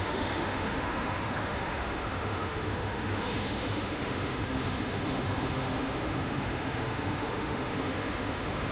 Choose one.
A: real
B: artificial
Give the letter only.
B